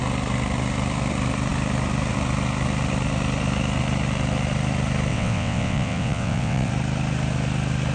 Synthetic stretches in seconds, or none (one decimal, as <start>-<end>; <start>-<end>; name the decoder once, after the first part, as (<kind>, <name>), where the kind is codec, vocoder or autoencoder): 5.1-6.7 (vocoder, WaveNeXt)